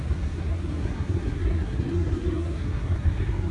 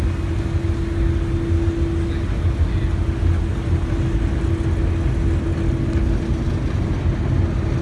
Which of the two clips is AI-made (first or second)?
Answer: first